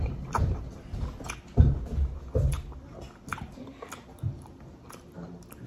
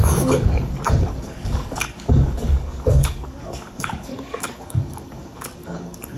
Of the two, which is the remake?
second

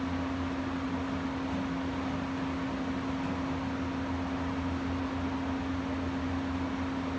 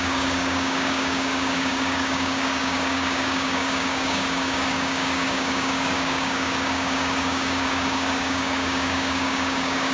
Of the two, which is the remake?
second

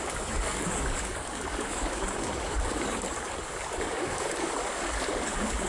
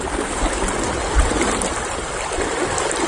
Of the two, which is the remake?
first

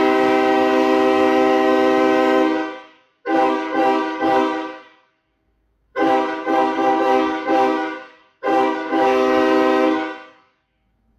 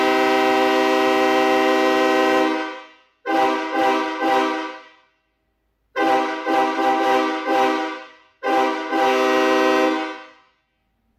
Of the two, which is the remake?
first